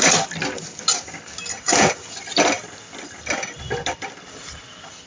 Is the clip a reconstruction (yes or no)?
no